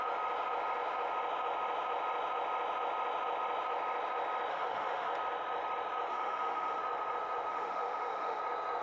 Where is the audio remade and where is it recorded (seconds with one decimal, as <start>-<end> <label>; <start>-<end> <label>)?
0.0-4.5 recorded; 4.5-5.1 remade; 5.1-6.1 recorded; 6.1-6.8 remade; 6.8-7.5 recorded; 7.5-8.4 remade; 8.4-8.8 recorded